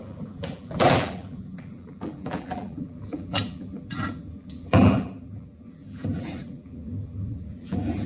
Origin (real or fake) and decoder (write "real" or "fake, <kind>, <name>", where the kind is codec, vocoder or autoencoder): fake, vocoder, BigVGAN v2